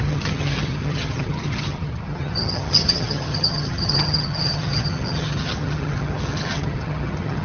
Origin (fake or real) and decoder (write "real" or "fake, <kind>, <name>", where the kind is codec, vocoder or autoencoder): fake, vocoder, HiFi-GAN